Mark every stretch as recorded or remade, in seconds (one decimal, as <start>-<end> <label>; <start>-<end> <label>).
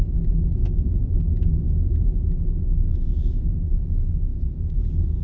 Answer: 0.0-0.6 recorded; 0.6-2.0 remade; 2.0-4.3 recorded; 4.3-4.8 remade; 4.8-5.2 recorded